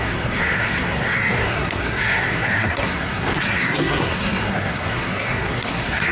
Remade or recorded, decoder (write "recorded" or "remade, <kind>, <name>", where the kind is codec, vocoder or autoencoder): remade, codec, SNAC